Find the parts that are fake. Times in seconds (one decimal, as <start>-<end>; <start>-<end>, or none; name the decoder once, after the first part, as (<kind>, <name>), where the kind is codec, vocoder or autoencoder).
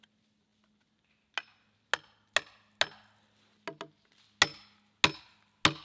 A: none